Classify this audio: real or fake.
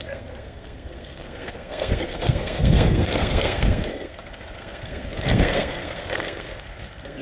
fake